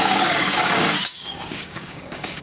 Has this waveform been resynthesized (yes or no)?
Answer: yes